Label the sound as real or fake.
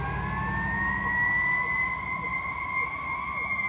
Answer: real